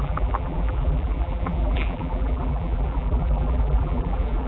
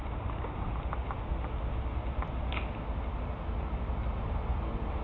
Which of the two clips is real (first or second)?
second